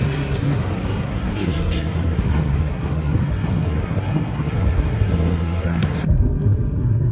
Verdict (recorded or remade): remade